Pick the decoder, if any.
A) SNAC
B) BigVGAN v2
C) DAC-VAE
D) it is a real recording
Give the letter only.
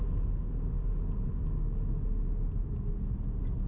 D